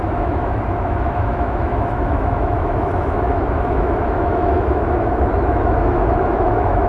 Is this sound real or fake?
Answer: fake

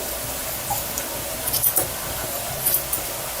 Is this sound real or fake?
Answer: real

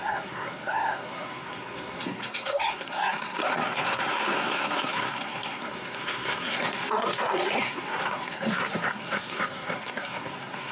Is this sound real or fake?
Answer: fake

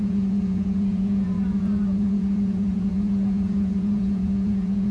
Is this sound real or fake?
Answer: fake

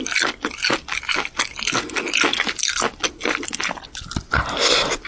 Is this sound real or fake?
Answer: real